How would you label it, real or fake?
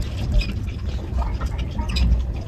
real